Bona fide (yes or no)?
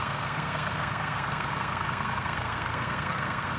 no